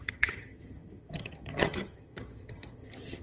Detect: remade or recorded remade